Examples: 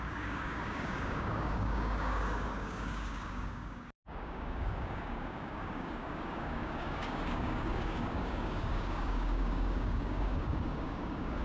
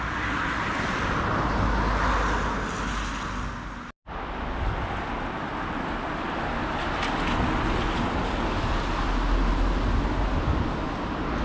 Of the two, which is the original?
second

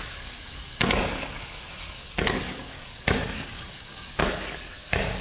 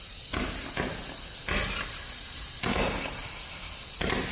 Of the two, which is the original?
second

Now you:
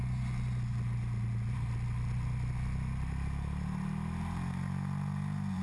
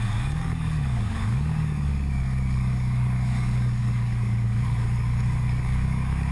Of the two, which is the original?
first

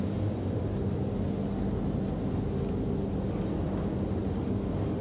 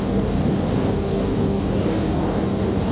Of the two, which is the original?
first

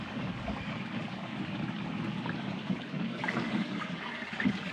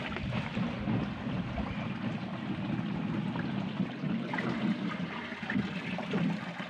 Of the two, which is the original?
second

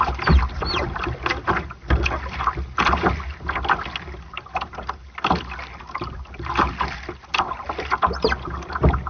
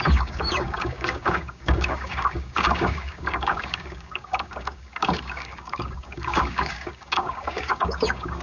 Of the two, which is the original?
first